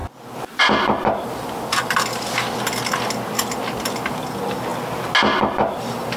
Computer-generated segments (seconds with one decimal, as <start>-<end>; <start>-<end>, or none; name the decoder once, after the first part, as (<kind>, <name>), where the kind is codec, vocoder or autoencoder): none